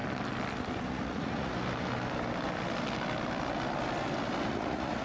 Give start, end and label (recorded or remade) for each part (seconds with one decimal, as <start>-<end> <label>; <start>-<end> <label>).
0.0-0.9 recorded; 0.9-1.5 remade; 1.5-4.5 recorded; 4.5-5.0 remade